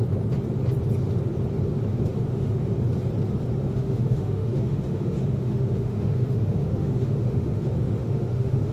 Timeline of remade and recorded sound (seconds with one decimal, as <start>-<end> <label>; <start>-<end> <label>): 0.0-1.9 recorded; 1.9-2.7 remade; 2.7-3.6 recorded; 3.6-8.7 remade